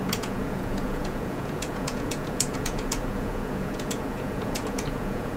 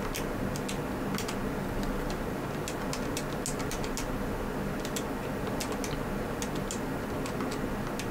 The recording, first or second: second